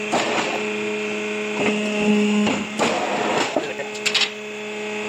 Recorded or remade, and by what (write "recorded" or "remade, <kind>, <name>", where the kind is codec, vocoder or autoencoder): recorded